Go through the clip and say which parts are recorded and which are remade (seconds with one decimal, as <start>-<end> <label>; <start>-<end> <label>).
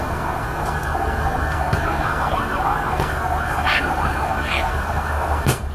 0.0-5.7 remade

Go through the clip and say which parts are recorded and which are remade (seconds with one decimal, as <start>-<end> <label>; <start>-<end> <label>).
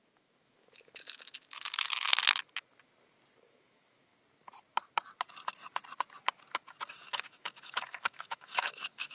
0.0-2.1 remade; 2.1-3.5 recorded; 3.5-4.1 remade; 4.1-6.9 recorded; 6.9-9.1 remade